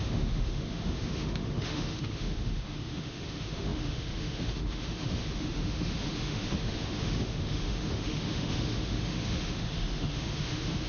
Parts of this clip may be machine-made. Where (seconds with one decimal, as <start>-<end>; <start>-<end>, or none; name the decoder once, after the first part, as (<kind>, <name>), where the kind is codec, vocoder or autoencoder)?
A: 0.0-10.9 (autoencoder, DAC-VAE)